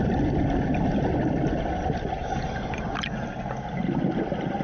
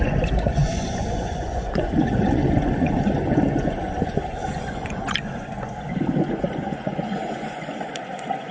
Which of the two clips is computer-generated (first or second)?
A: second